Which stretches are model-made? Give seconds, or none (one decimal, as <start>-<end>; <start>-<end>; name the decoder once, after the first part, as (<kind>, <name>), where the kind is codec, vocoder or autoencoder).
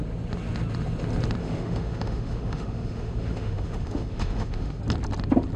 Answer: 1.4-4.8 (autoencoder, DAC-VAE)